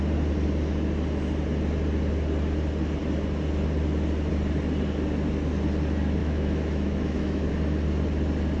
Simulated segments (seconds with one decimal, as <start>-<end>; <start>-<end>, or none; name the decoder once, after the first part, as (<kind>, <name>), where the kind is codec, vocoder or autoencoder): 6.2-7.5 (autoencoder, DAC-VAE)